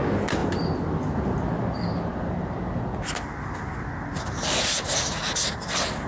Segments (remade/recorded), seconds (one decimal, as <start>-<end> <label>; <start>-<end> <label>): 0.0-6.1 recorded